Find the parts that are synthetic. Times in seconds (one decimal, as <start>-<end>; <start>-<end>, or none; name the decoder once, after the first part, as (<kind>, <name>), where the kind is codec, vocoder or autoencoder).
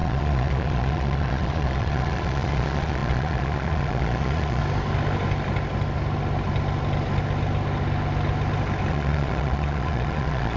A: 0.0-4.6 (vocoder, Vocos); 8.9-10.6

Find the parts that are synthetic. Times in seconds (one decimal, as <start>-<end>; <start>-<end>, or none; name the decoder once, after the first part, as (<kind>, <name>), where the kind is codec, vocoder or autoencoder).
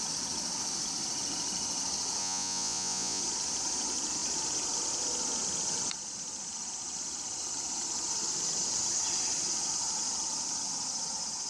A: 2.2-3.2 (vocoder, Vocos)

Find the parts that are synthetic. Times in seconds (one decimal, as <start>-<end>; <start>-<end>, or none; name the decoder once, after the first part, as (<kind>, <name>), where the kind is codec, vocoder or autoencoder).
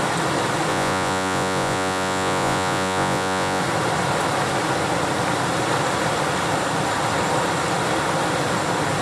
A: 0.7-3.6 (vocoder, Vocos)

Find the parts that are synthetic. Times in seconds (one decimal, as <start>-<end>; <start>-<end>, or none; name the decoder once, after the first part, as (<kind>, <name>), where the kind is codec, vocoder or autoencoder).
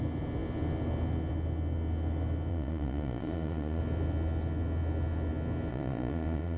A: 2.5-3.8 (vocoder, Vocos); 5.7-6.6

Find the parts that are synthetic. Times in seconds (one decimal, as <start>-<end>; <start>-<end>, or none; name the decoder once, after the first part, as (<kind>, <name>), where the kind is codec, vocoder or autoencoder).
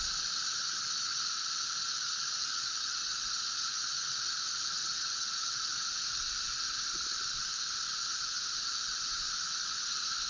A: 2.5-6.2 (vocoder, Vocos)